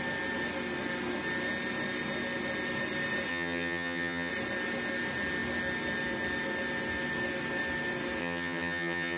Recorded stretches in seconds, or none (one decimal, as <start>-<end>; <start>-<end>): 0.0-3.3; 4.3-8.2